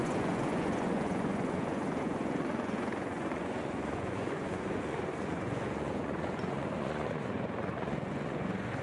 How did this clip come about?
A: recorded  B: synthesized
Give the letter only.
B